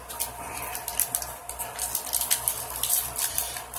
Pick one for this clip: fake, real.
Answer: real